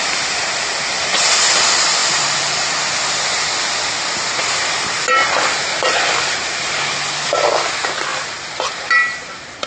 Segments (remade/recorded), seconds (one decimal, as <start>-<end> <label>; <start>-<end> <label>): 0.0-2.0 recorded; 2.0-3.2 remade; 3.2-9.7 recorded